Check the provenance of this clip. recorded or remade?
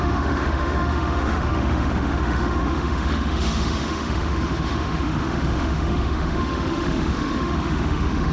remade